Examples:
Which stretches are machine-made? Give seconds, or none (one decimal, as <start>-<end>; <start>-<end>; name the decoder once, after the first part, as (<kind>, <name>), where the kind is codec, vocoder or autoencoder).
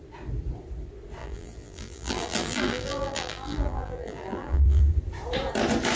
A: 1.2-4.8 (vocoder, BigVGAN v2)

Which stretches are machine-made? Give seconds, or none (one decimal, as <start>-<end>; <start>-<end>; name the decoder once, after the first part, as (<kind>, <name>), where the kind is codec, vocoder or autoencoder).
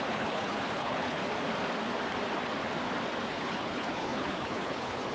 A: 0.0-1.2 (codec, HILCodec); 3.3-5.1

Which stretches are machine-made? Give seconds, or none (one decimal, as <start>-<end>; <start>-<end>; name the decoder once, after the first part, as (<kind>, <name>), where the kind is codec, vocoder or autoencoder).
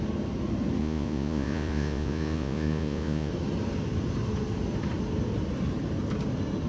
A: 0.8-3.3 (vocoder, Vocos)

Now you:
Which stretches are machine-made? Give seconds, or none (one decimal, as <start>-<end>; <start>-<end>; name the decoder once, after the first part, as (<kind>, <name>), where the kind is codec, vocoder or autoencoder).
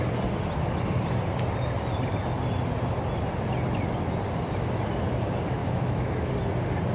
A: 5.6-6.3 (autoencoder, DAC-VAE)